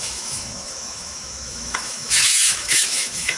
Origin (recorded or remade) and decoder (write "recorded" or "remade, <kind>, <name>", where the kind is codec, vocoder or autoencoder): remade, autoencoder, DAC-VAE